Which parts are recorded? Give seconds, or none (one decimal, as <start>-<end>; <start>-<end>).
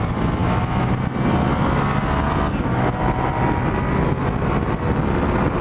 0.0-5.6